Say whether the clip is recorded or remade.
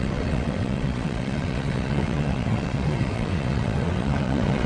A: remade